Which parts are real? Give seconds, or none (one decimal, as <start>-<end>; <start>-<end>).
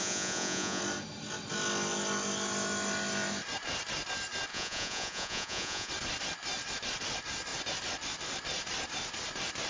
0.8-4.5; 5.9-9.7